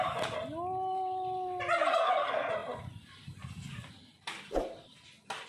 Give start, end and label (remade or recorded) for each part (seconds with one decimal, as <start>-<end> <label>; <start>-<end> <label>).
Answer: 0.0-5.5 recorded